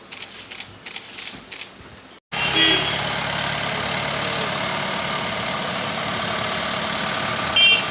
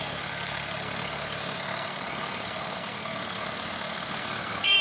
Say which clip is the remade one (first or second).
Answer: second